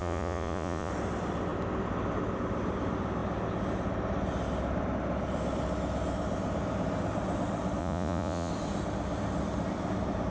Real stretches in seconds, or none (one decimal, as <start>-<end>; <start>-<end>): 0.9-7.8; 8.5-10.3